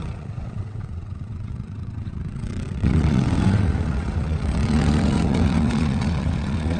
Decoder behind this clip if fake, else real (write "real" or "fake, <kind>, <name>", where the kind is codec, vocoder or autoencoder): fake, vocoder, WaveNeXt